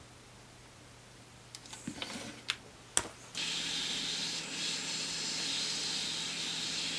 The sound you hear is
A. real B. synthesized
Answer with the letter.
A